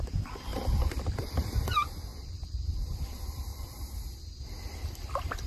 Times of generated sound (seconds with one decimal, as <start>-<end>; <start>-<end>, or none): 0.5-1.6; 2.1-3.1; 3.5-4.4